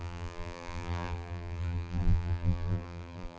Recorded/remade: remade